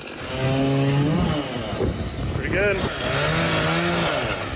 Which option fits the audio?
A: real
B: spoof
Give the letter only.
A